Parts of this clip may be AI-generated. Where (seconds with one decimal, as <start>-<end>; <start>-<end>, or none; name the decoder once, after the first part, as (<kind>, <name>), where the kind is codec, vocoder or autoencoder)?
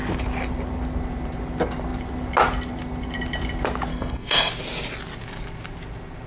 3.9-4.5 (codec, SNAC)